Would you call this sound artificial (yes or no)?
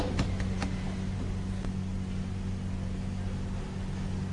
no